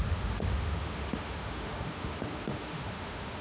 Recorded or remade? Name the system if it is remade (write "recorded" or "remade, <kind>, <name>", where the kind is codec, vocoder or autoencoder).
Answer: remade, autoencoder, DAC-VAE